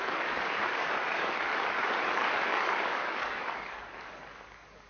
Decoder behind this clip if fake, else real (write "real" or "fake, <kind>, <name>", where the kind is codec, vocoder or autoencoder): fake, codec, DAC